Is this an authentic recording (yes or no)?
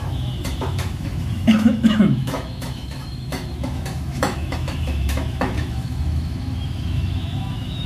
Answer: no